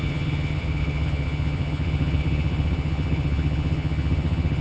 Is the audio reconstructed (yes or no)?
yes